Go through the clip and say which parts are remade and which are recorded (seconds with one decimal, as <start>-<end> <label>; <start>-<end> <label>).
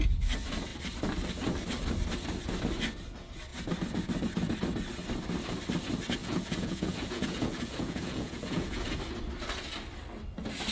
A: 0.0-6.2 recorded; 6.2-9.0 remade; 9.0-10.7 recorded